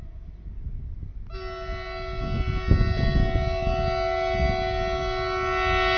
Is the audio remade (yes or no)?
no